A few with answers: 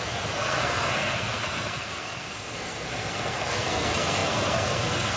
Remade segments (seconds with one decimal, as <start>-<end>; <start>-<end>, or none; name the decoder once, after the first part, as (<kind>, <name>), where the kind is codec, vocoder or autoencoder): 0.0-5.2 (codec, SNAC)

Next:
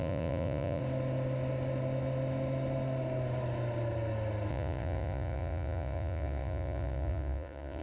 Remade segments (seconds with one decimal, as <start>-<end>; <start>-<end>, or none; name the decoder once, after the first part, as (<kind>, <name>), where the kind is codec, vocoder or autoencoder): 0.0-0.8 (vocoder, Vocos); 4.5-7.8

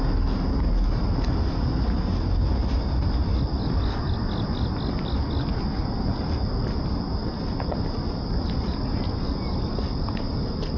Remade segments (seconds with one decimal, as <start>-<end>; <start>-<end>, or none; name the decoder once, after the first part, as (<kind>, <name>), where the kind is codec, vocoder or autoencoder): none

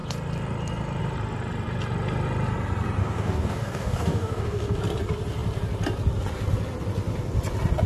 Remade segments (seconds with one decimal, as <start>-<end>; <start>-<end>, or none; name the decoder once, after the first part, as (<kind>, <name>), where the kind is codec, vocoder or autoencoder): 3.0-4.8 (codec, DAC)

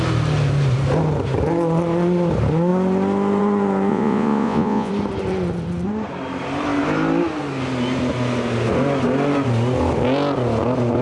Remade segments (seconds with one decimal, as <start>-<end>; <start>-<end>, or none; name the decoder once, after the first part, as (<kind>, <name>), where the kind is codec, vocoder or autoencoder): 3.9-4.9 (vocoder, Vocos)